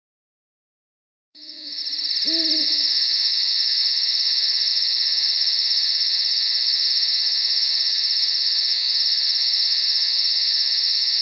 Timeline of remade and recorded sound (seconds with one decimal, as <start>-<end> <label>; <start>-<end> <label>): 0.0-1.8 remade; 1.8-2.6 recorded; 2.6-11.2 remade